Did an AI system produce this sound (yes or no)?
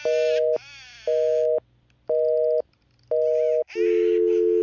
no